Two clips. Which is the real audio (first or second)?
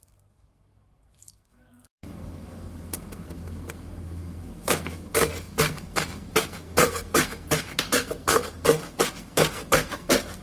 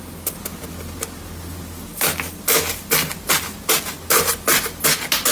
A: second